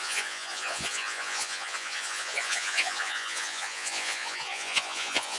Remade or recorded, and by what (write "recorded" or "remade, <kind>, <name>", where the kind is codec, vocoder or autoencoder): remade, vocoder, Vocos